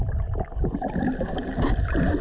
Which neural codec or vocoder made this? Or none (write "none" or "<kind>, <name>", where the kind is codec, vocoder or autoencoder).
vocoder, BigVGAN v2